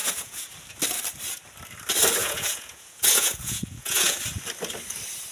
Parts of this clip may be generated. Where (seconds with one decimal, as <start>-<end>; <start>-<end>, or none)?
0.0-0.5; 2.2-4.2